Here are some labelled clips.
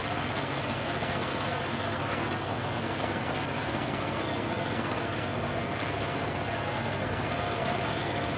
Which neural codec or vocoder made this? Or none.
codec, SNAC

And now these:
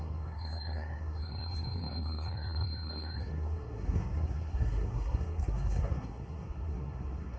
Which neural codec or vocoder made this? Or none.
codec, SNAC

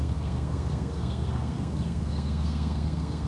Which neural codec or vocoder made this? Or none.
codec, SNAC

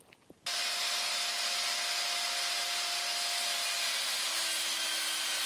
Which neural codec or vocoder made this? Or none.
none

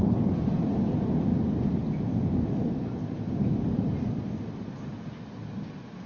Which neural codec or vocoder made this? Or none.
none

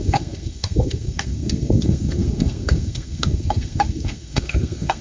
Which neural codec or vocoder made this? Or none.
codec, SNAC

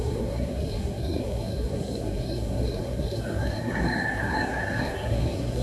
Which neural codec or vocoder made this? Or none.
codec, SNAC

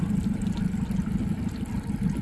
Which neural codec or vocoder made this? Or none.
none